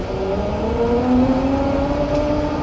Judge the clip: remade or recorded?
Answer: recorded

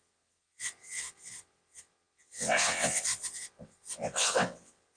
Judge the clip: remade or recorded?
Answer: remade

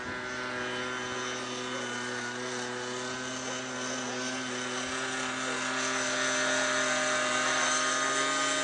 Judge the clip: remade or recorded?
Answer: recorded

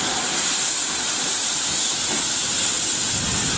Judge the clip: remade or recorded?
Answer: recorded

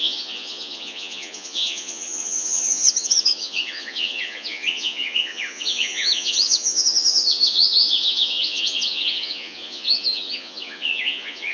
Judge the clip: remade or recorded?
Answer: remade